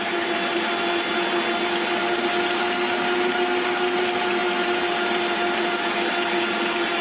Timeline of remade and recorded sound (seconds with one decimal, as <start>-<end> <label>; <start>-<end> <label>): 0.0-7.0 recorded